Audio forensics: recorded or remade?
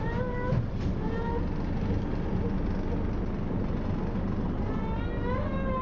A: recorded